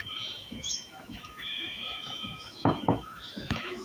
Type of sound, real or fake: fake